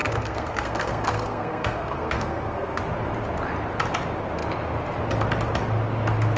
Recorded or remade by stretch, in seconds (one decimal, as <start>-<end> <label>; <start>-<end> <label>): 0.0-2.8 remade; 2.8-6.4 recorded